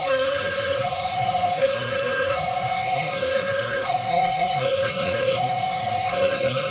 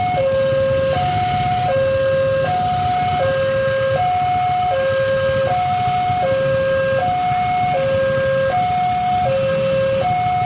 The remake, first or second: first